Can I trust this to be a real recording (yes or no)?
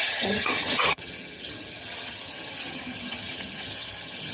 no